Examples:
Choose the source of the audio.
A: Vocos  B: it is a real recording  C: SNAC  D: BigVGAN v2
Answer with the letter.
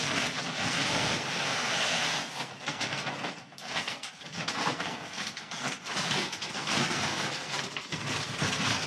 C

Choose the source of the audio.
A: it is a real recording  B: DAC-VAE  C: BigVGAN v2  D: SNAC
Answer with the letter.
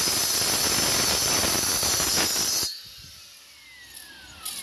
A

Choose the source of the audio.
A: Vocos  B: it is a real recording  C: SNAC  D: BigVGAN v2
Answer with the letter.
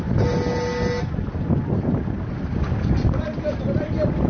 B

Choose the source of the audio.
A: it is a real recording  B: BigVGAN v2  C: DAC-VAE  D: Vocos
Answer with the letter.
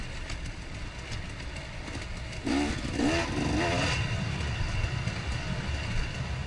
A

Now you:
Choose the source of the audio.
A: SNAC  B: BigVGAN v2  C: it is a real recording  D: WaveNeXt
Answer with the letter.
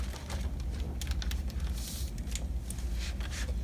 C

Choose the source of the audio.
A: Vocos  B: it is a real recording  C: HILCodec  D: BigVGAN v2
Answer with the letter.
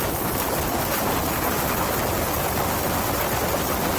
B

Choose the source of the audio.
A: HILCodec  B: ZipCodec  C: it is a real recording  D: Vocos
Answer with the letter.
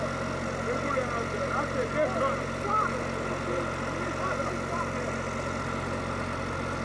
C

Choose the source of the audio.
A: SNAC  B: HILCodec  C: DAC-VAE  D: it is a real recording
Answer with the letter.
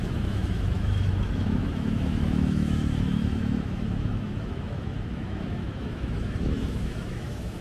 C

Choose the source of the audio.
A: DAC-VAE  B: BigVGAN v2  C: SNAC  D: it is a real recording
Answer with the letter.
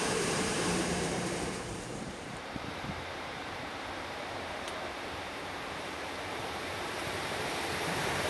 B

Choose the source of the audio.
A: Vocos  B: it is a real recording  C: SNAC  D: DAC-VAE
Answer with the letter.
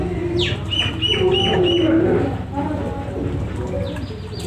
B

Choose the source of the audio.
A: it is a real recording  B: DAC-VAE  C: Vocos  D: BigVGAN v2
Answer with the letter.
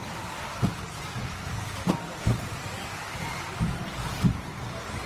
D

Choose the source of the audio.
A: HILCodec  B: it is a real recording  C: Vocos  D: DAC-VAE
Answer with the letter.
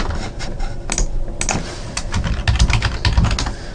B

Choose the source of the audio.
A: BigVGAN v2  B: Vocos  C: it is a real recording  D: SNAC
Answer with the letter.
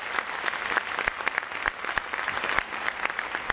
C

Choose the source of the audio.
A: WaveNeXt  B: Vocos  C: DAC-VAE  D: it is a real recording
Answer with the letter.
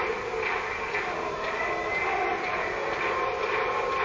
D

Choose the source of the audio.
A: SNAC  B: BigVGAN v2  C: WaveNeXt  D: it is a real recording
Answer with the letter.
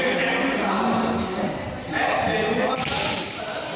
D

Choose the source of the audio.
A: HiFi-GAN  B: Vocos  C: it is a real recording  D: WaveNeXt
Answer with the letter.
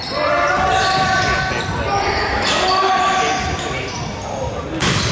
C